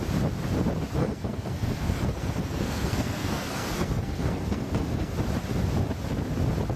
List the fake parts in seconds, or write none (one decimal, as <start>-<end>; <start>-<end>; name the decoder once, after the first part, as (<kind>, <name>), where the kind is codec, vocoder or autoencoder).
1.0-5.1 (codec, SNAC)